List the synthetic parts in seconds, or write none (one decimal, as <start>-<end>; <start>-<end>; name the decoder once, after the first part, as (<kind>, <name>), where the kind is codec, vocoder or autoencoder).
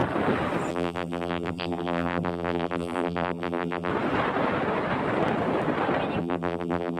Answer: 0.7-3.9 (vocoder, BigVGAN v2); 6.2-7.0